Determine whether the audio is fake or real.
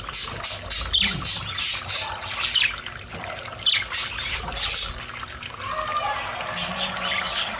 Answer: real